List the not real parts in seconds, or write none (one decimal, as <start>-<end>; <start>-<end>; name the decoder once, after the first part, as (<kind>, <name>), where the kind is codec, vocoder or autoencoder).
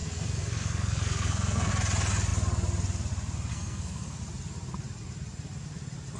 0.0-1.7 (codec, SNAC); 3.5-4.2